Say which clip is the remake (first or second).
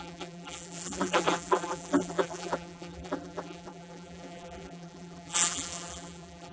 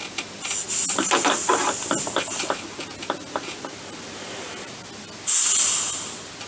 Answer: first